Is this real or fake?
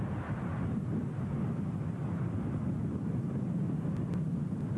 real